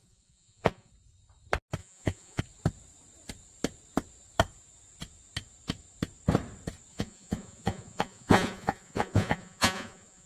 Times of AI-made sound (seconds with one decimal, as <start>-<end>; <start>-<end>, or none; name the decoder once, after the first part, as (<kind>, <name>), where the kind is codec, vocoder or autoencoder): 0.0-0.9 (vocoder, Vocos); 1.8-2.4; 6.9-10.3